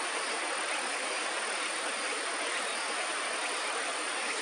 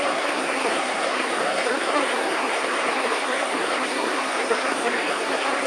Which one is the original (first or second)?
first